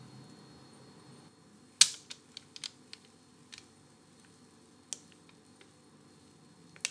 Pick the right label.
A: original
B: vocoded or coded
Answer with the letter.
A